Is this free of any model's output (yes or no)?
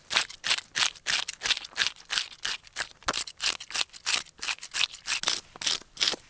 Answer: yes